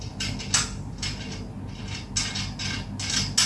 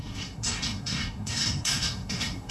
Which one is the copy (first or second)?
second